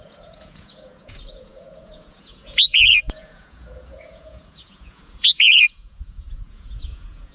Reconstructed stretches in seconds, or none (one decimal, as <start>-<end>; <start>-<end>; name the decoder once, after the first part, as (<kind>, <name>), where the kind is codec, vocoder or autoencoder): 0.0-7.3 (vocoder, Vocos)